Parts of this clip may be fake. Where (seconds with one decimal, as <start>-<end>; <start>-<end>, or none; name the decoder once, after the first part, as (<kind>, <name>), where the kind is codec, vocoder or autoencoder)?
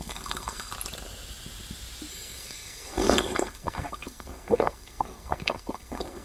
0.0-0.7 (codec, SNAC); 2.1-6.2